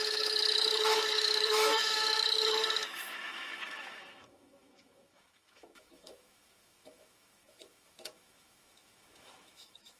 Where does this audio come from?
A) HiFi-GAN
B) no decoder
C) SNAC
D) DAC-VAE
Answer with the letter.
D